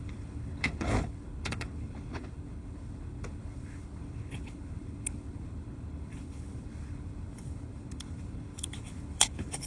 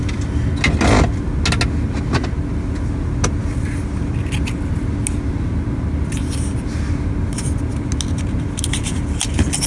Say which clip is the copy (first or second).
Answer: first